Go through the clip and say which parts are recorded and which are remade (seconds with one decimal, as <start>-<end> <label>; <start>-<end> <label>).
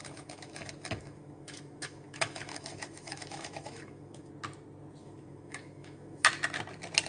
0.0-4.3 remade; 4.3-5.0 recorded; 5.0-6.3 remade; 6.3-7.1 recorded